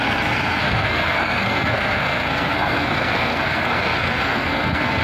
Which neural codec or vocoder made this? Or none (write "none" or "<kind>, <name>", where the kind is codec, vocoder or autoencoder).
codec, SNAC